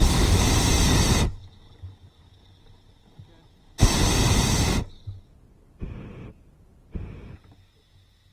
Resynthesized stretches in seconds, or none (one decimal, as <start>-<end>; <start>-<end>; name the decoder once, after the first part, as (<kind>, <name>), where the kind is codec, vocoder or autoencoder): none